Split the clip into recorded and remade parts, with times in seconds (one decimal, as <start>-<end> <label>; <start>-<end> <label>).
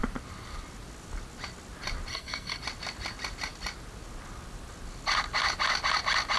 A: 0.0-2.1 recorded; 2.1-2.6 remade; 2.6-6.4 recorded